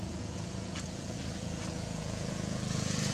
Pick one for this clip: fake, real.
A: fake